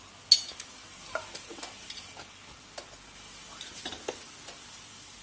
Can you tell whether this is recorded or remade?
recorded